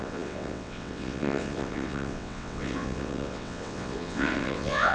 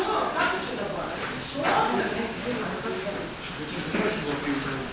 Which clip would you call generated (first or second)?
first